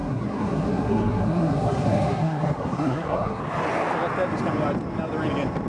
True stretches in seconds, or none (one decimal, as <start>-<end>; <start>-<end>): 3.4-5.7